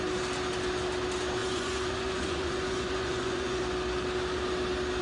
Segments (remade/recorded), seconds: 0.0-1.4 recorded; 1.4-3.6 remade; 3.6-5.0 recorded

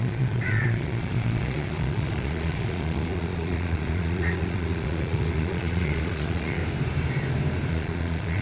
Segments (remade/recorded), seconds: 0.0-6.6 remade; 6.6-7.7 recorded; 7.7-8.4 remade

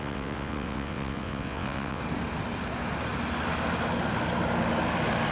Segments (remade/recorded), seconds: 0.0-2.0 remade; 2.0-5.3 recorded

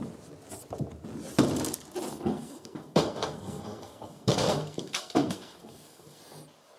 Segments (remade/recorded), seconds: 0.0-2.1 recorded; 2.1-6.2 remade; 6.2-6.8 recorded

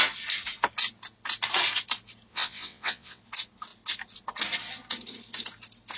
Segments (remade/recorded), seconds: 0.0-2.3 recorded; 2.3-3.2 remade; 3.2-6.0 recorded

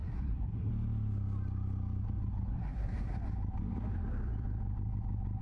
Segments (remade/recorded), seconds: 0.0-0.7 remade; 0.7-2.5 recorded; 2.5-3.2 remade; 3.2-5.4 recorded

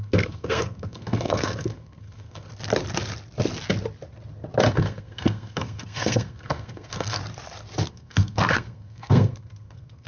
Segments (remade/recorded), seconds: 0.0-2.5 remade; 2.5-4.7 recorded; 4.7-7.2 remade; 7.2-7.9 recorded; 7.9-10.1 remade

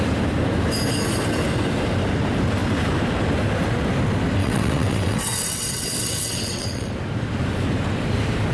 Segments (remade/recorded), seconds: 0.0-4.4 recorded; 4.4-6.9 remade; 6.9-8.5 recorded